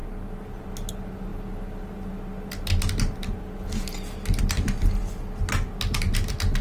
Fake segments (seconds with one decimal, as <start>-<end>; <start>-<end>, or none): none